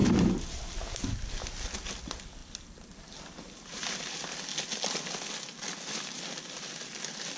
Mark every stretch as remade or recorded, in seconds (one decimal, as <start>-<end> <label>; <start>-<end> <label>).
0.0-0.6 remade; 0.6-7.4 recorded